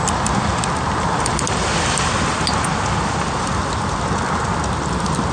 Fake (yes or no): no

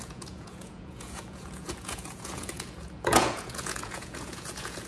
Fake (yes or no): yes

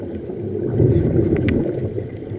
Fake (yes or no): no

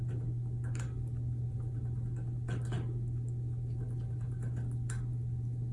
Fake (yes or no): no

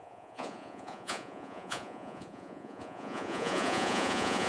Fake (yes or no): yes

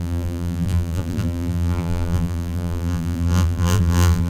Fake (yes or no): yes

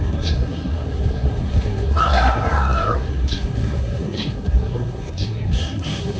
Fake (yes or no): yes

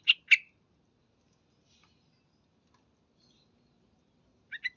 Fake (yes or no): no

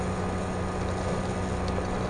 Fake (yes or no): no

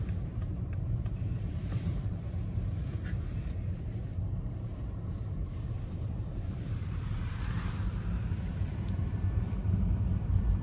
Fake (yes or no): yes